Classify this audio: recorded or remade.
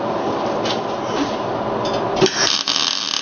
recorded